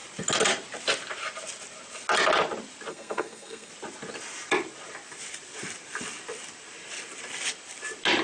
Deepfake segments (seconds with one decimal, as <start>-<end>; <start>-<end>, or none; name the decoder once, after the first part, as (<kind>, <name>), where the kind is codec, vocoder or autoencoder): 2.9-3.7 (codec, SNAC)